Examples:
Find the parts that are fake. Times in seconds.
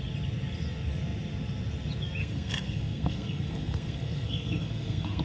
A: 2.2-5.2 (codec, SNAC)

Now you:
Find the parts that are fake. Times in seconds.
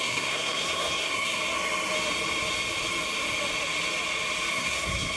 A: 0.0-1.4 (codec, SNAC); 4.5-5.2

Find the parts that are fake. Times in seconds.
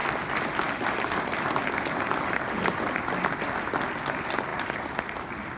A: none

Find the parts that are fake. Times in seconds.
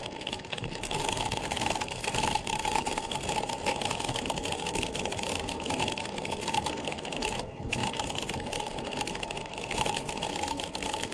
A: 0.0-11.1 (codec, SNAC)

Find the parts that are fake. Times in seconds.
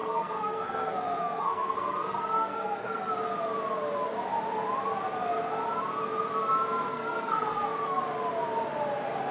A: 0.0-3.1 (codec, SNAC); 6.9-8.0